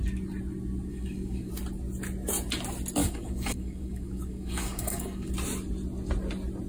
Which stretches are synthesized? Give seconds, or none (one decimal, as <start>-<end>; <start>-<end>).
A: 0.9-1.5; 3.0-5.3